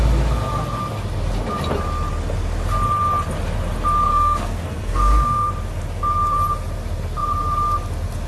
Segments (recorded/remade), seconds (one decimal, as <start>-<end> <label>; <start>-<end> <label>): 0.0-4.1 recorded; 4.1-5.5 remade; 5.5-8.3 recorded